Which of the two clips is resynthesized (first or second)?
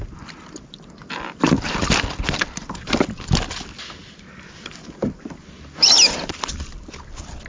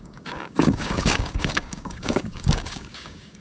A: second